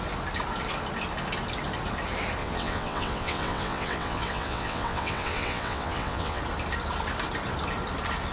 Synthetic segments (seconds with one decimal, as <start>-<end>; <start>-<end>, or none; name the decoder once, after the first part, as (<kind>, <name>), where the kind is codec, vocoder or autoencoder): 2.4-6.4 (vocoder, WaveNeXt)